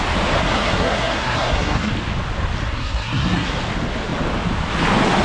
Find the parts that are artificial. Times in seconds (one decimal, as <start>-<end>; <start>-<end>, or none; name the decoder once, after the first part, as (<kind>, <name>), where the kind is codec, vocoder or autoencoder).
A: 0.4-1.9 (codec, SNAC); 2.6-3.6